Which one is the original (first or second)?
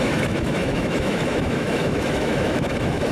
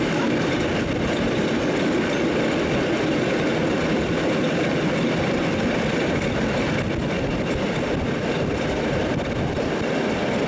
second